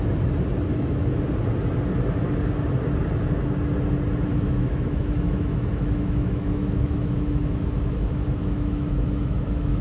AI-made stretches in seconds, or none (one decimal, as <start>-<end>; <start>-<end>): 0.7-1.2; 4.3-9.8

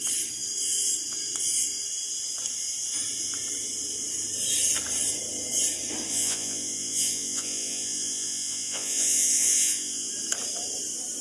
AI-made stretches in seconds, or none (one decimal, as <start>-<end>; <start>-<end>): 6.1-10.1

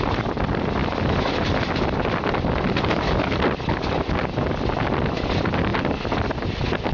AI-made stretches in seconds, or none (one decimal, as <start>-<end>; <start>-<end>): none

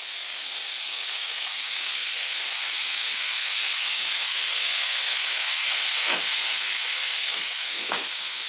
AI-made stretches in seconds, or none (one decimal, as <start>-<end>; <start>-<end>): 0.0-8.5

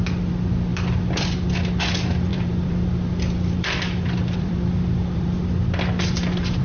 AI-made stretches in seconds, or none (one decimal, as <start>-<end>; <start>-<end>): 0.7-1.2; 2.3-6.6